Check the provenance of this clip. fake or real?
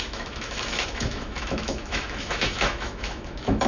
fake